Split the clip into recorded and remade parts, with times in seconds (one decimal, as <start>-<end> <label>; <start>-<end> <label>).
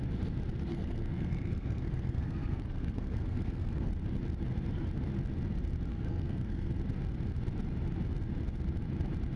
0.0-0.7 recorded; 0.7-3.9 remade; 3.9-5.9 recorded; 5.9-6.7 remade; 6.7-9.4 recorded